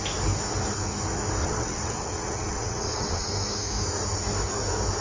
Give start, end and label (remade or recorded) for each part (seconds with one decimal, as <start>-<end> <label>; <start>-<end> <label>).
0.0-1.4 recorded; 1.4-3.3 remade; 3.3-5.0 recorded